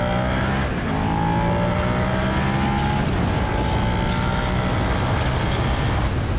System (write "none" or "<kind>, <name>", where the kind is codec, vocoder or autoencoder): none